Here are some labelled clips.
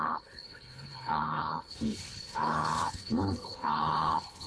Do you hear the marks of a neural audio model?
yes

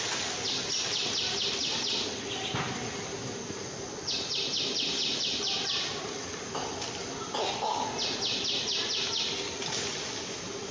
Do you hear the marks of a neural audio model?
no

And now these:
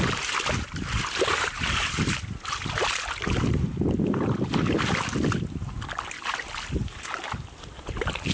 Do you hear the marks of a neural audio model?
no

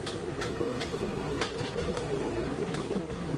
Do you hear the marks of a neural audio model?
yes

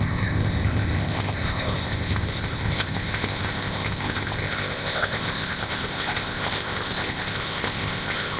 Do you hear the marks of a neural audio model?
yes